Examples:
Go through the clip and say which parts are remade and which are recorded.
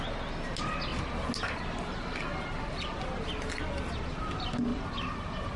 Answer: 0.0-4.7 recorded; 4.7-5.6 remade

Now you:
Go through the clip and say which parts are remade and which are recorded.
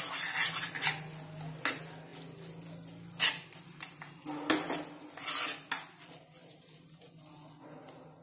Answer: 0.0-8.2 recorded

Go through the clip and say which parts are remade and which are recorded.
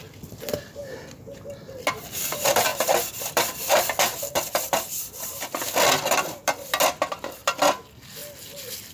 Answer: 0.0-0.8 remade; 0.8-1.9 recorded; 1.9-6.4 remade; 6.4-7.1 recorded; 7.1-8.9 remade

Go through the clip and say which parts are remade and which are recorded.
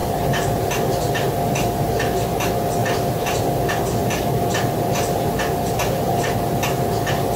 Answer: 0.0-0.7 remade; 0.7-2.8 recorded; 2.8-3.4 remade; 3.4-7.4 recorded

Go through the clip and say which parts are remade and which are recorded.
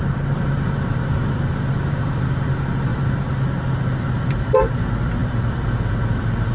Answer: 0.0-2.9 remade; 2.9-3.7 recorded; 3.7-6.5 remade